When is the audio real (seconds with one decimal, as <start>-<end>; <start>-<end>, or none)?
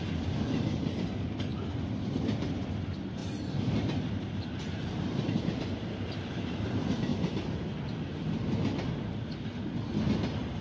0.0-10.6